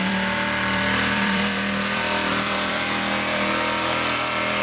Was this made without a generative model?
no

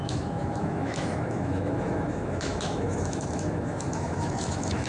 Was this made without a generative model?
no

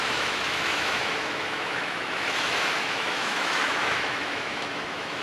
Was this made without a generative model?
no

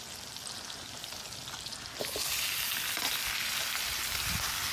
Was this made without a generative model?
yes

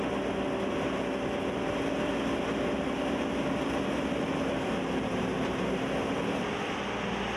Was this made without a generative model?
yes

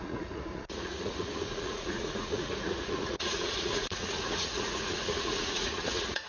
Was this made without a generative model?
no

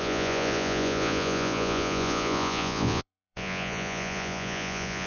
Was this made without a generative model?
no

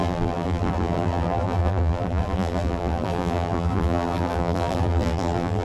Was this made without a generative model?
no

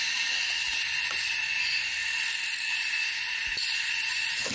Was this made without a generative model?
yes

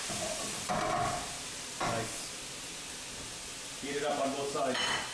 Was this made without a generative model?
yes